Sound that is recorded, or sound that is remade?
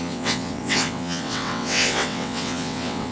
remade